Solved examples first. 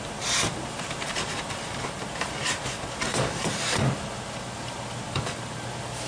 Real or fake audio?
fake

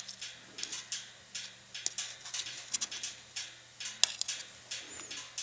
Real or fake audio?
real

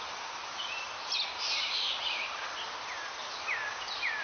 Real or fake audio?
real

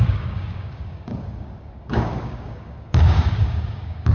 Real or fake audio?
fake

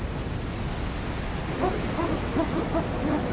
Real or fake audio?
real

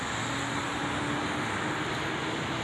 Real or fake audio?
real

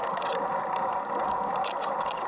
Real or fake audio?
real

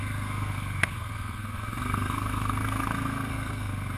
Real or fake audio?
fake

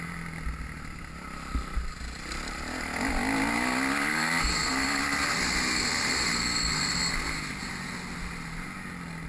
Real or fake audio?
real